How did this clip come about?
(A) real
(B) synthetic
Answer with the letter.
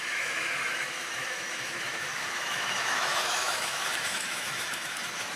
B